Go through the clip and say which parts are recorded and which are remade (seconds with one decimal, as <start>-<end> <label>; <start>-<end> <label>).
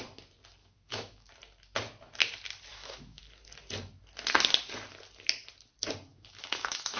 0.0-0.6 recorded; 0.6-1.3 remade; 1.3-2.7 recorded; 2.7-3.2 remade; 3.2-6.1 recorded; 6.1-7.0 remade